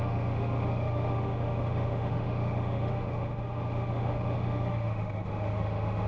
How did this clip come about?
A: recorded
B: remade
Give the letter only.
B